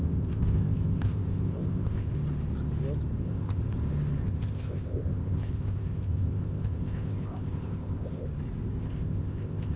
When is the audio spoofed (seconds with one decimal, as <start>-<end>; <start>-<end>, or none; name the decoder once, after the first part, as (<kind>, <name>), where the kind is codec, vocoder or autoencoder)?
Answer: 0.0-2.1 (codec, ZipCodec); 3.2-3.6; 4.2-8.3; 8.8-9.8